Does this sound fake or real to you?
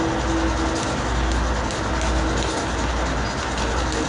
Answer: real